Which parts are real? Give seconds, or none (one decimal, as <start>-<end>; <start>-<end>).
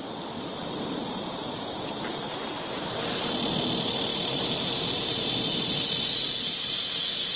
0.0-4.1; 6.4-7.4